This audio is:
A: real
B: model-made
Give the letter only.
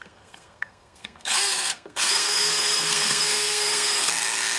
B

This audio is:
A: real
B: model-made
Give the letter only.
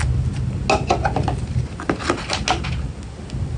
A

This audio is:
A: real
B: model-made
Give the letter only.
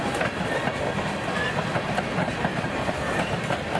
A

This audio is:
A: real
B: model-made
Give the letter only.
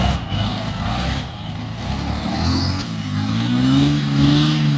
B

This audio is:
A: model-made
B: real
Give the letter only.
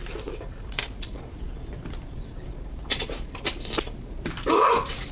A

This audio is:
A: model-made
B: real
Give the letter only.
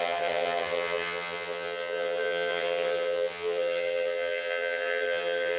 A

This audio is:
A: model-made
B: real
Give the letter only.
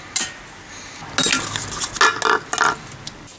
B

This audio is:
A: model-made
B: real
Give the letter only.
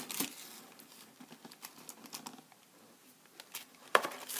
B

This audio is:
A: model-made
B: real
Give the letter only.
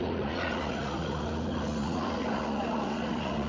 A